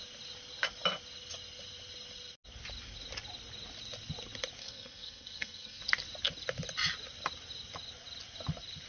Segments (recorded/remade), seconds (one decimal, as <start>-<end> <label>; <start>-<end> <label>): 0.0-4.6 recorded; 4.6-5.8 remade; 5.8-8.9 recorded